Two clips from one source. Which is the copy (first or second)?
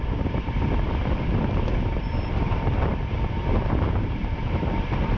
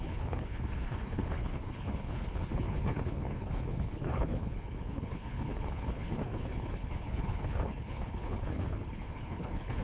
second